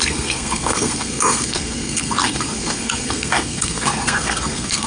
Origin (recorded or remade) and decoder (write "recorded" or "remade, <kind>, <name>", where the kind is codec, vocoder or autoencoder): remade, codec, SNAC